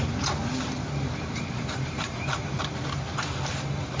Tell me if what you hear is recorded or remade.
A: remade